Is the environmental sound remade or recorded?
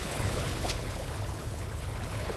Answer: remade